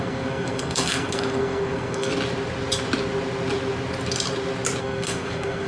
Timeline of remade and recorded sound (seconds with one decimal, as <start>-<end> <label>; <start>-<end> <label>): 0.0-2.1 remade; 2.1-4.8 recorded; 4.8-5.7 remade